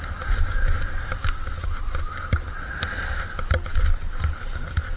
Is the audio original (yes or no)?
yes